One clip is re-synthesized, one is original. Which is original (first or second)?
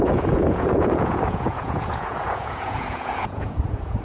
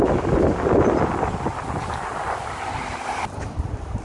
second